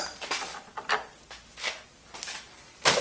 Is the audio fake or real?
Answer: real